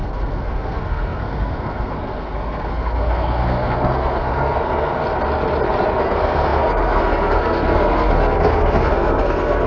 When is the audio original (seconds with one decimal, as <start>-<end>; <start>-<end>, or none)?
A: 4.9-6.0